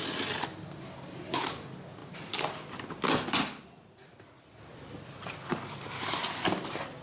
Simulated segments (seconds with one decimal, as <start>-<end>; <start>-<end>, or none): none